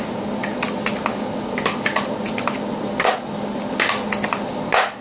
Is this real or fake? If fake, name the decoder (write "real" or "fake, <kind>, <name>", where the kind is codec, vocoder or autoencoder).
real